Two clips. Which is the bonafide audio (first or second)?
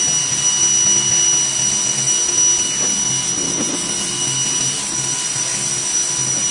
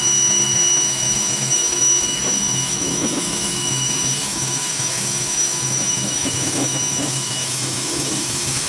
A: first